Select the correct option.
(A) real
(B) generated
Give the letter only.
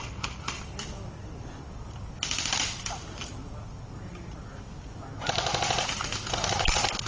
A